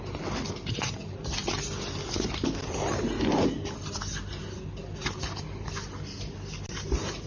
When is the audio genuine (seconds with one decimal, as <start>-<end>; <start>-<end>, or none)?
0.0-7.3